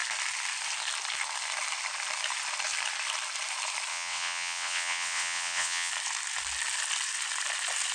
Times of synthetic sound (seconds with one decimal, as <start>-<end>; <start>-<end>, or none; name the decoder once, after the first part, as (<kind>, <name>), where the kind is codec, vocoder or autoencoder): 3.9-5.9 (vocoder, WaveNeXt)